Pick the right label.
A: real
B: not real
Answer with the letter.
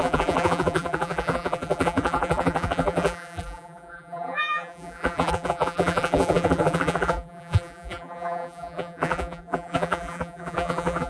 B